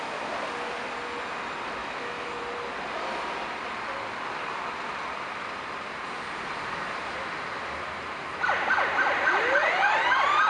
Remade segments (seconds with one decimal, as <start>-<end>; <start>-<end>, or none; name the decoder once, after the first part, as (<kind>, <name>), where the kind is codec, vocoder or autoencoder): 1.8-2.4 (autoencoder, DAC-VAE)